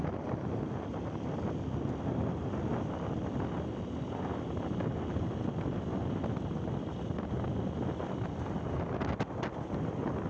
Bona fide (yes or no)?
yes